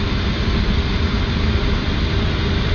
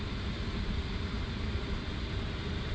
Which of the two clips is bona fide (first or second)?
first